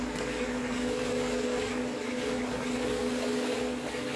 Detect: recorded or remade remade